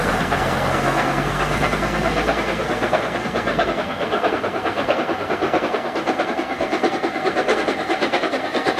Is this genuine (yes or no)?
no